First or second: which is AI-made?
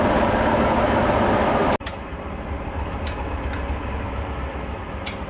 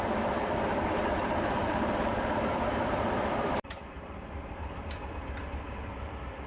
second